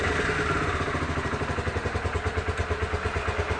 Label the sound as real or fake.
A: real